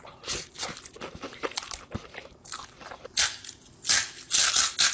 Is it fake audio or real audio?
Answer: real